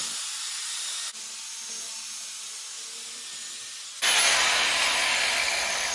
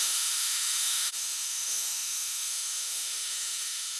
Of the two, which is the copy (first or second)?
second